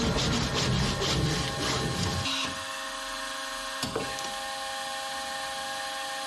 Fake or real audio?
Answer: real